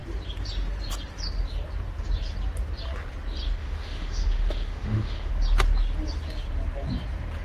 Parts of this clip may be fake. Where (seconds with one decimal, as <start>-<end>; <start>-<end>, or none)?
3.6-5.3